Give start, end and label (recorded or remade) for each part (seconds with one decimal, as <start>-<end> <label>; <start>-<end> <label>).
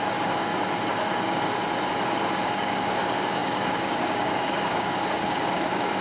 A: 0.0-0.5 remade; 0.5-2.5 recorded; 2.5-6.0 remade